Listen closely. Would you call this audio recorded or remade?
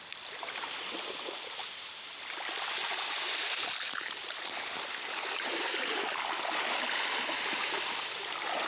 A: recorded